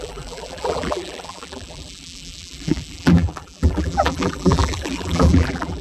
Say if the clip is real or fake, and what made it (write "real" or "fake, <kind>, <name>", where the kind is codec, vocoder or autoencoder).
fake, vocoder, BigVGAN v2